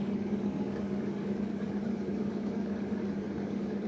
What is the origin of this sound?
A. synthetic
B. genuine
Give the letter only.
A